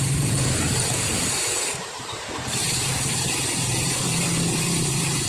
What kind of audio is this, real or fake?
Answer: fake